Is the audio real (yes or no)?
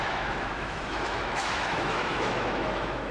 no